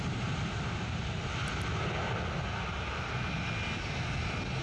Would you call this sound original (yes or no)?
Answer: yes